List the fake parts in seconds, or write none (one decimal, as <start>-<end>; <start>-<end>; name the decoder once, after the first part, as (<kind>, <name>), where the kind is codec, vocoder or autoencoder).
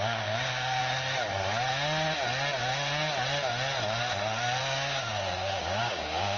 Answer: 0.0-0.8 (codec, DAC); 4.6-6.4